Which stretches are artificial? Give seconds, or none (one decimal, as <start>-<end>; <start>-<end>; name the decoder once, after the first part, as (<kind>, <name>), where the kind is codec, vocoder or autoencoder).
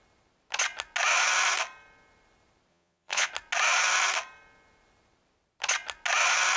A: 2.7-3.3 (vocoder, Vocos)